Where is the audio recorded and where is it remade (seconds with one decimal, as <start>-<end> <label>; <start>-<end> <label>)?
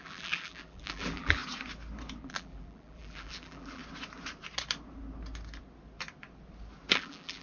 0.0-1.4 remade; 1.4-2.2 recorded; 2.2-3.8 remade; 3.8-6.9 recorded; 6.9-7.4 remade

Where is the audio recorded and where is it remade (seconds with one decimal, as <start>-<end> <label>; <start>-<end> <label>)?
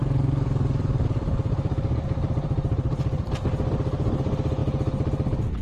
0.0-3.2 remade; 3.2-5.6 recorded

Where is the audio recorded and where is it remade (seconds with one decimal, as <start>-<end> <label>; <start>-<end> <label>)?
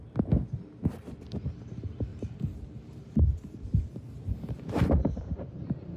0.0-2.1 recorded; 2.1-6.0 remade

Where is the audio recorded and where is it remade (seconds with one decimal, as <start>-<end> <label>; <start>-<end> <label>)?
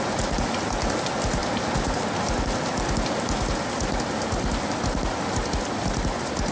0.0-6.5 recorded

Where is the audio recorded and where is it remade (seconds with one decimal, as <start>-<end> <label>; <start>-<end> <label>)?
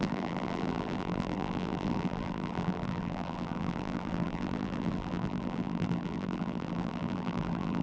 0.0-7.8 remade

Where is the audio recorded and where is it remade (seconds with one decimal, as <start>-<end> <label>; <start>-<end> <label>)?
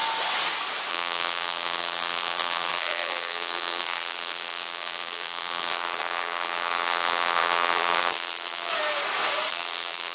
0.0-0.9 recorded; 0.9-8.7 remade; 8.7-9.5 recorded; 9.5-10.1 remade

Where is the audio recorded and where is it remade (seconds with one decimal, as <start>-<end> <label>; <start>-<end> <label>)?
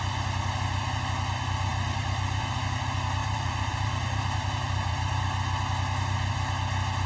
0.0-1.7 recorded; 1.7-2.4 remade; 2.4-3.2 recorded; 3.2-5.2 remade; 5.2-7.1 recorded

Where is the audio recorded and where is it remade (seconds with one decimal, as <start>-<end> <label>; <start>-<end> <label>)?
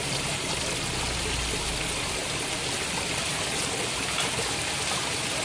0.0-0.6 remade; 0.6-5.4 recorded